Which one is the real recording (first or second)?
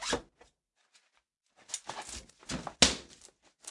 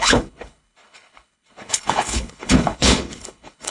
first